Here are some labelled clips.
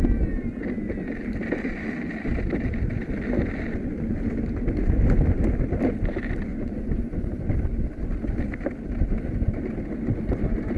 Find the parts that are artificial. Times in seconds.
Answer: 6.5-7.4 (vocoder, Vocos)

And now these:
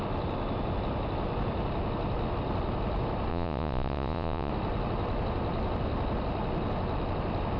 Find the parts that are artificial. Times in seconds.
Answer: 3.3-4.5 (vocoder, Vocos)

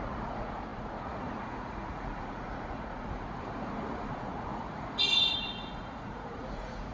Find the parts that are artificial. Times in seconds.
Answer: 0.0-6.9 (vocoder, Vocos)

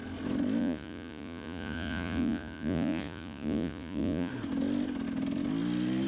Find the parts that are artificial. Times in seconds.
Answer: 0.6-4.3 (vocoder, Vocos)